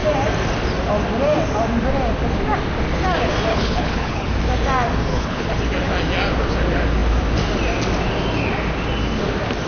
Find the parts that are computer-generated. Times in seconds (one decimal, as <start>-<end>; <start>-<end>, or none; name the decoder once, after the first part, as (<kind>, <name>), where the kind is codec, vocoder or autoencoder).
3.5-4.3 (codec, HILCodec); 5.1-5.6